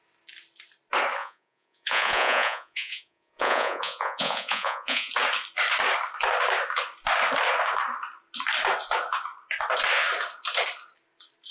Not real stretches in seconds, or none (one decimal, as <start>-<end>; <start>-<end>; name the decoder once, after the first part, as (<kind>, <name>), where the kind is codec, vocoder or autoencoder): 1.2-5.1 (vocoder, Vocos)